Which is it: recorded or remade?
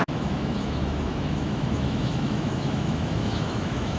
remade